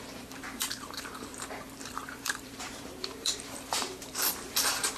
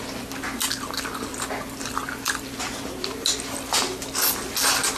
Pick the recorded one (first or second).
second